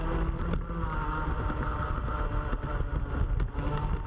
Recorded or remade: recorded